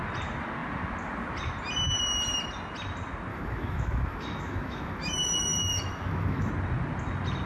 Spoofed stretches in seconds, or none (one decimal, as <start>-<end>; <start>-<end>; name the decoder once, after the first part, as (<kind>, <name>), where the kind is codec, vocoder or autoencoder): 3.3-6.5 (autoencoder, DAC-VAE)